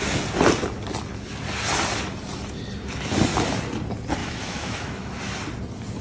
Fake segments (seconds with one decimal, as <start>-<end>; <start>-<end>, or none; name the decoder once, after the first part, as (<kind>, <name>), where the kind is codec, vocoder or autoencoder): 4.2-5.2 (autoencoder, DAC-VAE)